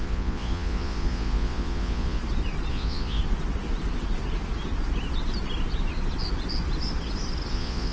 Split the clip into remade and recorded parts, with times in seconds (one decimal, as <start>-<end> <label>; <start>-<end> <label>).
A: 0.0-2.2 remade; 2.2-2.7 recorded; 2.7-3.2 remade; 3.2-7.5 recorded; 7.5-7.9 remade